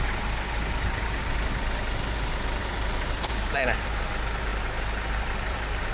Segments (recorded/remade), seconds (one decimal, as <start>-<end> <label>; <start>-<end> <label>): 0.0-2.6 recorded; 2.6-3.9 remade; 3.9-4.5 recorded; 4.5-5.9 remade

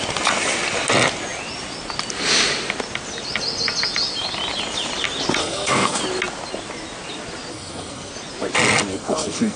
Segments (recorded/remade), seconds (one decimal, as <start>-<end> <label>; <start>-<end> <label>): 0.0-5.4 recorded; 5.4-6.0 remade; 6.0-7.5 recorded; 7.5-8.1 remade; 8.1-8.9 recorded; 8.9-9.6 remade

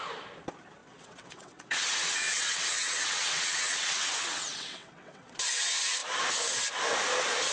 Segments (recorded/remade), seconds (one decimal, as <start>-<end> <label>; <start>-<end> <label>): 0.0-0.8 recorded; 0.8-5.3 remade; 5.3-7.5 recorded

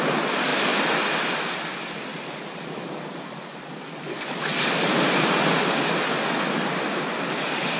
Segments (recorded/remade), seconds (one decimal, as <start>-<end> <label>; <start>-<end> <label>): 0.0-7.8 recorded

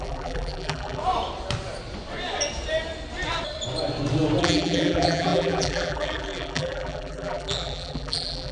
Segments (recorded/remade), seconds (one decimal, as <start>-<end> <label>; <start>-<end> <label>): 0.0-1.0 remade; 1.0-4.4 recorded; 4.4-8.5 remade

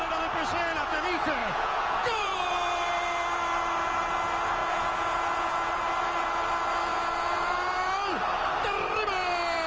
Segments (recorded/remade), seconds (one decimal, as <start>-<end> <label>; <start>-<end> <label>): 0.0-1.4 recorded; 1.4-2.4 remade; 2.4-4.6 recorded; 4.6-5.7 remade; 5.7-6.9 recorded; 6.9-7.5 remade; 7.5-9.7 recorded